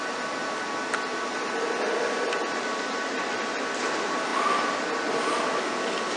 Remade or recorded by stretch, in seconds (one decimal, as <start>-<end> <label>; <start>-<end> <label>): 0.0-6.2 recorded